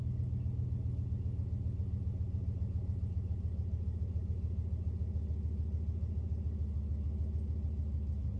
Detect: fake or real real